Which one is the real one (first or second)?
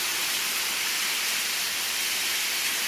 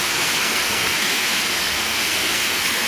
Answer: first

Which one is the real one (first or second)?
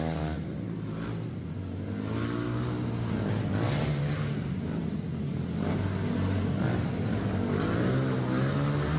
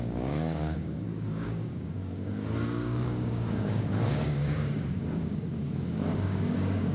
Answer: first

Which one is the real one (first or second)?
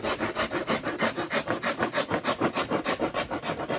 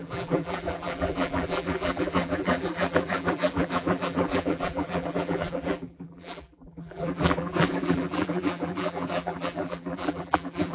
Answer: first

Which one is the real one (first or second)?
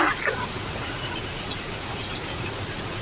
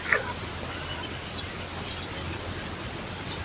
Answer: second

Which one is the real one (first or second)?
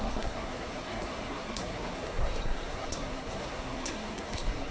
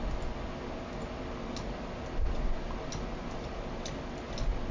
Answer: second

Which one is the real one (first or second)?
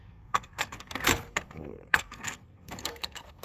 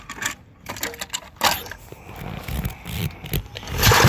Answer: second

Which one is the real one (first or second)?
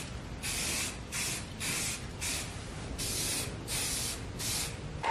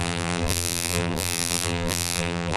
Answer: first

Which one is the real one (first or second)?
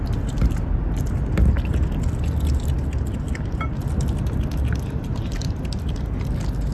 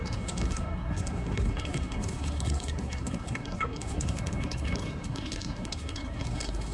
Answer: first